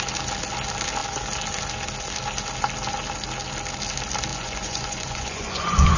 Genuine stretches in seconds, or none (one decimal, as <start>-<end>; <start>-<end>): 0.0-4.3